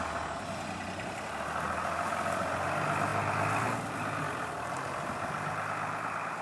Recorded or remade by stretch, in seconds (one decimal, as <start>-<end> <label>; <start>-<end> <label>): 0.0-6.4 recorded